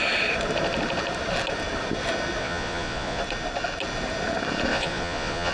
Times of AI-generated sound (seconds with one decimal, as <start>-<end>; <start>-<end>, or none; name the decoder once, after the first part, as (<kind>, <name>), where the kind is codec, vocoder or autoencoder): 2.4-3.2 (vocoder, Vocos); 4.7-5.5